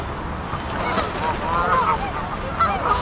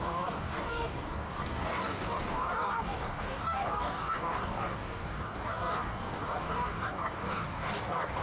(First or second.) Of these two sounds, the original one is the first